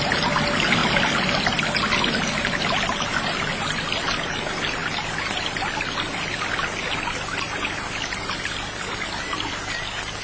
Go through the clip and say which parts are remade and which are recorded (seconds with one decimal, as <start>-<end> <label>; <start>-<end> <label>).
0.0-10.2 recorded